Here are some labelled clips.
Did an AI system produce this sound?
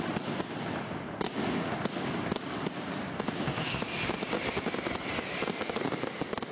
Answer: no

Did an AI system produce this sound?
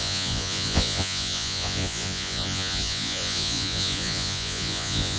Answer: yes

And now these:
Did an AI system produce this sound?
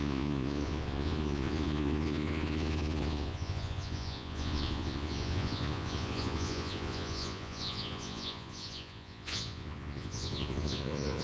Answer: yes